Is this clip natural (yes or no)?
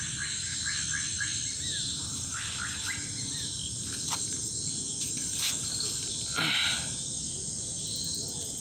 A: yes